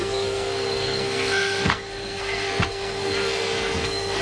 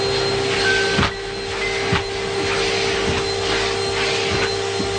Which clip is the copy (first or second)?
first